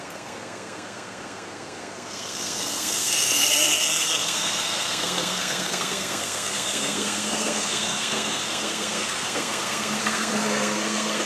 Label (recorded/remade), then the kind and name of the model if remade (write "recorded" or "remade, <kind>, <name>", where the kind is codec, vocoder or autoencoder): remade, codec, SNAC